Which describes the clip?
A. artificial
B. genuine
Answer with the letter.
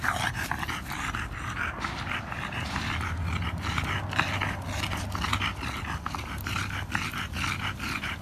B